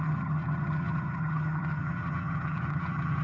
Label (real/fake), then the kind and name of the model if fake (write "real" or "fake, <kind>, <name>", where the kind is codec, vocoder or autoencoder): fake, vocoder, HiFi-GAN